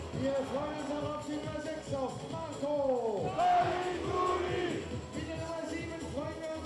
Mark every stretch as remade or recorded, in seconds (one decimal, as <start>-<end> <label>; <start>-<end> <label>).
0.0-6.7 recorded